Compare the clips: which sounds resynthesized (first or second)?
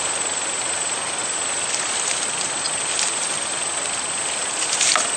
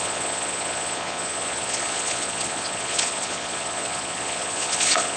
second